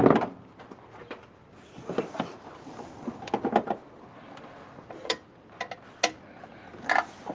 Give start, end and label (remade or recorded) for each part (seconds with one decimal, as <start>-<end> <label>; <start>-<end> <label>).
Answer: 0.0-1.4 recorded; 1.4-2.9 remade; 2.9-7.3 recorded